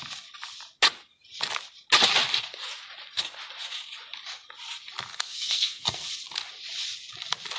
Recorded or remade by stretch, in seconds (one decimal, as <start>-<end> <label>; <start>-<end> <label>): 0.0-5.1 recorded; 5.1-6.1 remade; 6.1-7.6 recorded